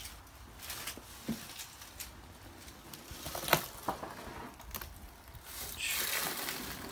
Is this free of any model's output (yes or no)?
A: yes